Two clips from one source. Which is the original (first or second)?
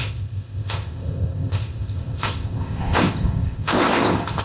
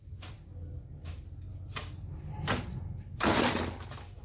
second